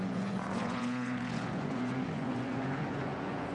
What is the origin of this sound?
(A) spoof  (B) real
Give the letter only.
A